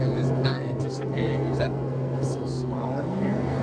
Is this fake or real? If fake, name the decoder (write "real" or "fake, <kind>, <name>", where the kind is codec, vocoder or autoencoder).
fake, codec, SNAC